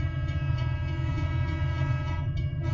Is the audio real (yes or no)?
no